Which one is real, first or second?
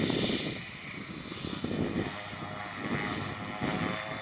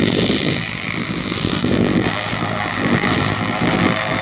first